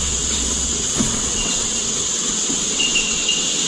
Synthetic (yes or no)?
yes